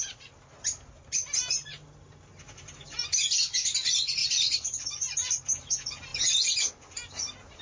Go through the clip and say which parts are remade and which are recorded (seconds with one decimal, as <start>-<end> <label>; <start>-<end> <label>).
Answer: 0.0-4.2 recorded; 4.2-5.4 remade; 5.4-7.6 recorded